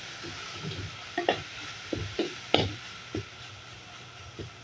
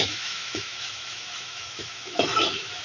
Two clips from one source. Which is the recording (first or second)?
first